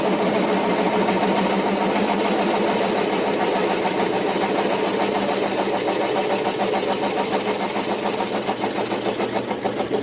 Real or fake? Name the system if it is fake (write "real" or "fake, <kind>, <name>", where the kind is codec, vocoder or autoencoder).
real